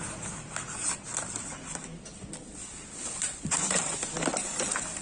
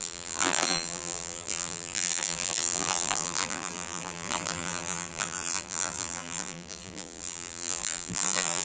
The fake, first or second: second